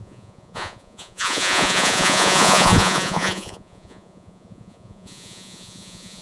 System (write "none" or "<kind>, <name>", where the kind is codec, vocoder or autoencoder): vocoder, Vocos